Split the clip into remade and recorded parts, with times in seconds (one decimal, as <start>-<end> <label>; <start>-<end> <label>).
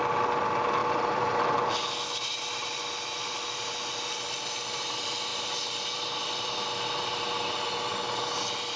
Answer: 0.0-0.8 recorded; 0.8-1.7 remade; 1.7-5.3 recorded; 5.3-7.2 remade; 7.2-8.8 recorded